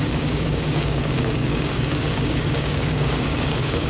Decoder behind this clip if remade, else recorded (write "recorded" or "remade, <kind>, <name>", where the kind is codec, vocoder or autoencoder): remade, codec, DAC